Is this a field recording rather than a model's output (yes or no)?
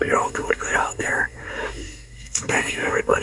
no